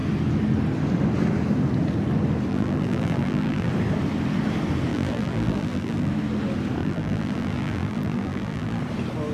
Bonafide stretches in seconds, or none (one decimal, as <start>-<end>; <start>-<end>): 0.0-2.5; 3.7-4.9; 6.1-6.8; 8.8-9.3